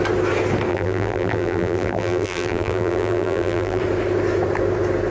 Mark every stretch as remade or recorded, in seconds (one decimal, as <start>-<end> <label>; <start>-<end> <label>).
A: 0.0-0.7 recorded; 0.7-3.8 remade; 3.8-5.1 recorded